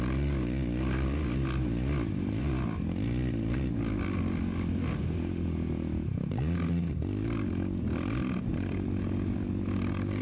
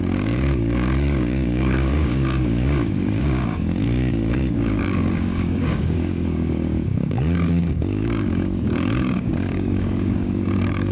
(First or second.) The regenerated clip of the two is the second